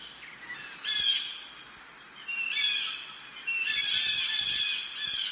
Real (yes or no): yes